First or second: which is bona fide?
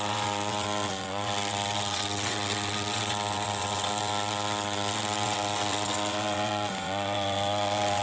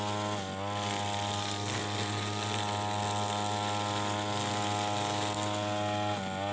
second